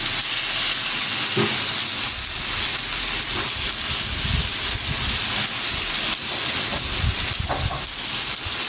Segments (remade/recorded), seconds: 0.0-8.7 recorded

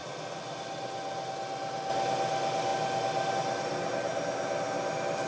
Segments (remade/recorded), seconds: 0.0-5.3 recorded

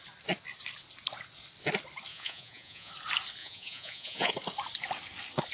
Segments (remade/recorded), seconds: 0.0-2.1 recorded; 2.1-2.9 remade; 2.9-3.4 recorded; 3.4-4.3 remade; 4.3-5.5 recorded

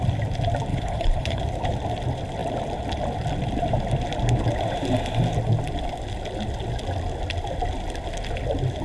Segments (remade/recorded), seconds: 0.0-0.7 recorded; 0.7-1.4 remade; 1.4-8.8 recorded

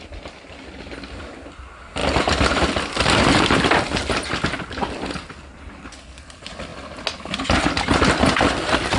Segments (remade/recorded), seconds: 0.0-9.0 recorded